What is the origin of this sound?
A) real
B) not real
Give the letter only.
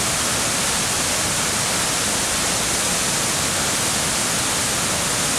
A